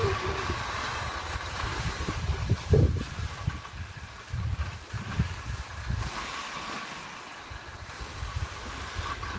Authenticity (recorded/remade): recorded